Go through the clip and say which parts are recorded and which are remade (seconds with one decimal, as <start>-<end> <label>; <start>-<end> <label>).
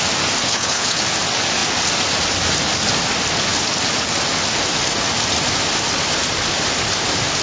0.0-0.4 recorded; 0.4-1.0 remade; 1.0-7.4 recorded